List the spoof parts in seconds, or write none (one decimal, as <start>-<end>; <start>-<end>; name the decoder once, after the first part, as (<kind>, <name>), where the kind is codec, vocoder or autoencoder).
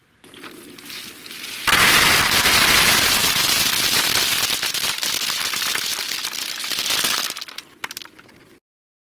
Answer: 5.9-6.8 (vocoder, BigVGAN v2)